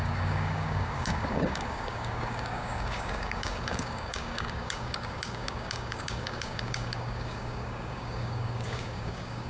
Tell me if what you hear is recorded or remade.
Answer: remade